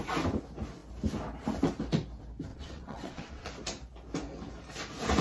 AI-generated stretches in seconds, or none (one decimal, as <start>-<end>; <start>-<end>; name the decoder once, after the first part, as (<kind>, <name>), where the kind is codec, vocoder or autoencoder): 2.5-3.5 (vocoder, WaveNeXt)